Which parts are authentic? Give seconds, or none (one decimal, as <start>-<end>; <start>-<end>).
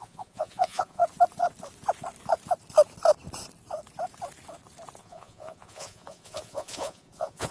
1.0-5.0